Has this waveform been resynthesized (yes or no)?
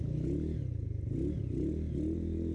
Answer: no